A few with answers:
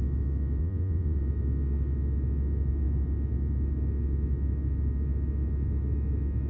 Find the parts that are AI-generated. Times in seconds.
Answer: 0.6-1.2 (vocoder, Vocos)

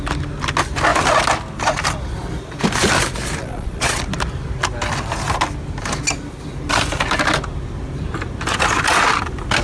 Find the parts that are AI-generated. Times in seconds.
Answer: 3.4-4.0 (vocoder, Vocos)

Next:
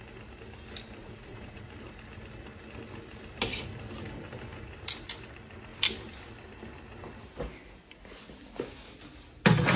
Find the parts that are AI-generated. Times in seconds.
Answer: 1.0-1.7 (vocoder, Vocos)

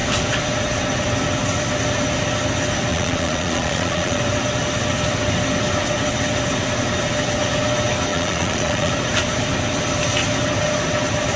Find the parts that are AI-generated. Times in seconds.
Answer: 2.9-4.2 (vocoder, Vocos); 8.1-8.9

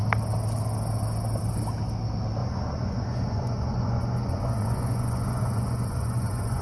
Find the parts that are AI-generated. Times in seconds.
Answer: 2.4-6.6 (vocoder, Vocos)